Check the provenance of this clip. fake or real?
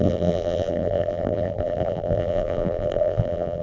fake